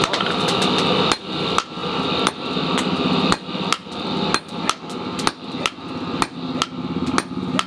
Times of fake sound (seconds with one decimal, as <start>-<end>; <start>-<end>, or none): none